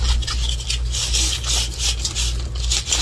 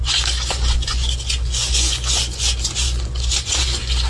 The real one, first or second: first